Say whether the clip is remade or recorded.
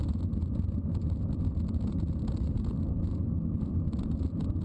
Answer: recorded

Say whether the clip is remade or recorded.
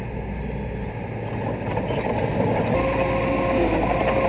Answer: recorded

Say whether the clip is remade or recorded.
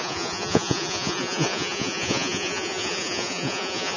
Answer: remade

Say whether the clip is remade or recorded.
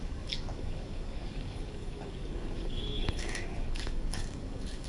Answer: remade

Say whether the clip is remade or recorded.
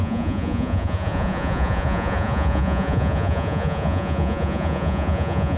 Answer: remade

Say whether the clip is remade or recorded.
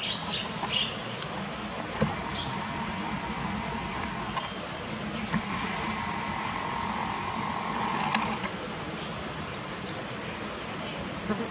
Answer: recorded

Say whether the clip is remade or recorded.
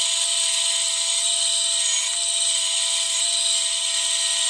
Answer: recorded